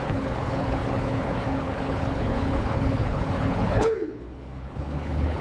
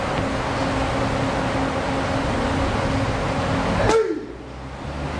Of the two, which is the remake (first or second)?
first